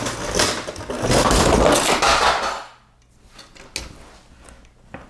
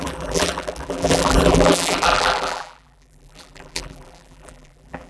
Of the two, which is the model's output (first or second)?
second